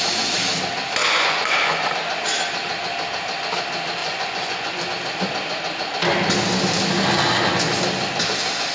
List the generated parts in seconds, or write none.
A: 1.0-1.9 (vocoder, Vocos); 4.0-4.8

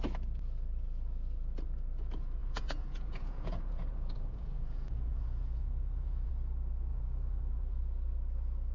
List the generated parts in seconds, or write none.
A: 2.4-6.3 (vocoder, Vocos); 6.9-7.8

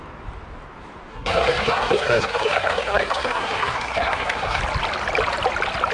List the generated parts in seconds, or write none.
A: 1.1-4.6 (codec, SNAC)

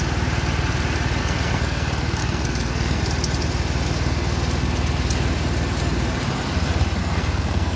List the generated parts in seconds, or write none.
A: 1.2-3.0 (codec, SNAC); 7.0-7.8

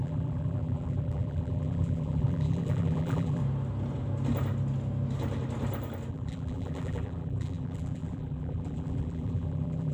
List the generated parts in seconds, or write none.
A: 0.0-3.4 (vocoder, BigVGAN v2); 6.1-9.9